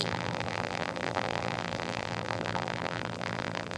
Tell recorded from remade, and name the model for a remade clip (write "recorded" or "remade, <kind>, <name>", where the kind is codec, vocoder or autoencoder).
remade, vocoder, BigVGAN v2